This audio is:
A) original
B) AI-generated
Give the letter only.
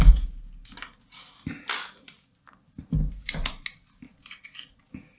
A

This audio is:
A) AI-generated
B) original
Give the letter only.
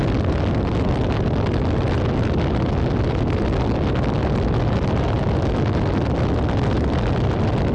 B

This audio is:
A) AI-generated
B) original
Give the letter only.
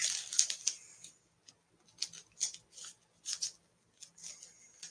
B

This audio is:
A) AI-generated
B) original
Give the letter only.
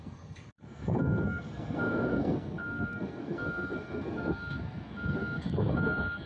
A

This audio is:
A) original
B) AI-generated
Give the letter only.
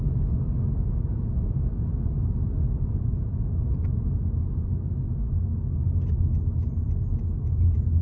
A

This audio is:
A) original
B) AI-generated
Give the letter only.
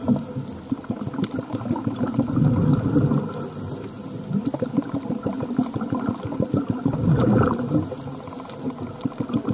A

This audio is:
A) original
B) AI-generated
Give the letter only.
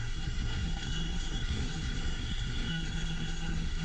B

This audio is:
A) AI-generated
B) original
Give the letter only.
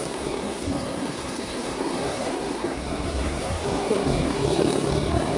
A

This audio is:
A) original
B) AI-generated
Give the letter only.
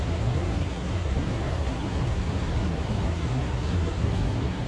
B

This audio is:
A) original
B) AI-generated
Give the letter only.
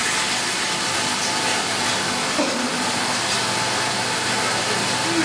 A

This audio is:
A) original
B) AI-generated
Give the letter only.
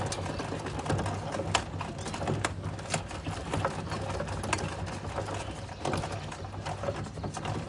A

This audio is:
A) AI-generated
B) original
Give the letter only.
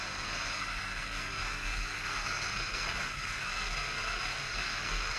A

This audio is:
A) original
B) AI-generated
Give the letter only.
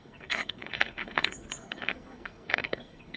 B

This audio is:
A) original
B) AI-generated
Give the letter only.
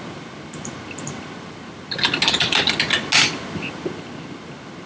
A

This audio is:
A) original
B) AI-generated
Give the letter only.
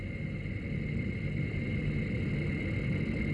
A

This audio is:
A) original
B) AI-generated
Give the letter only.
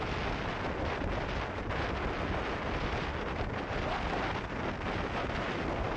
A